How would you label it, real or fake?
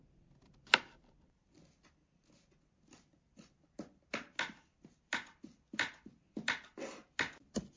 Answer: real